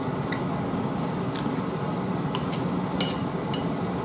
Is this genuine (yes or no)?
yes